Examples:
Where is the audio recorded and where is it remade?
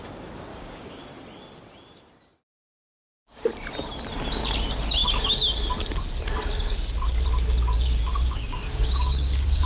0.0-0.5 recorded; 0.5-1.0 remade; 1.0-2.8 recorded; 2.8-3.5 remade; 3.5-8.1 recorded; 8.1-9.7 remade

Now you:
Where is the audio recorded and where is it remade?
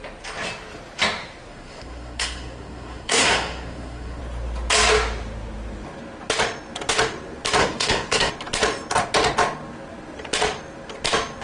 0.0-1.5 recorded; 1.5-4.2 remade; 4.2-7.6 recorded; 7.6-8.3 remade; 8.3-11.4 recorded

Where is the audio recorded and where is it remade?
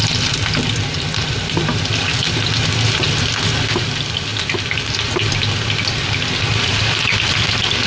0.0-7.9 recorded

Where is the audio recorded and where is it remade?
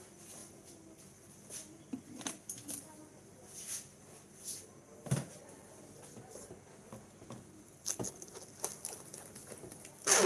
0.0-10.3 recorded